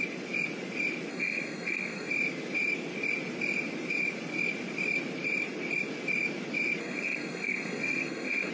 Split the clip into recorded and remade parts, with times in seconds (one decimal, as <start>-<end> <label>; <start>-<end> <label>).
0.0-1.1 recorded; 1.1-2.1 remade; 2.1-6.8 recorded; 6.8-8.5 remade